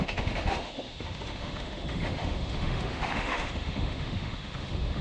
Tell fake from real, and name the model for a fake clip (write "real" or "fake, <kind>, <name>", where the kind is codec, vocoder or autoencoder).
fake, autoencoder, DAC-VAE